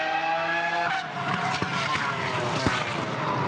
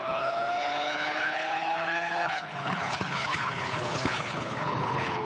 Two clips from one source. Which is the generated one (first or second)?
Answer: second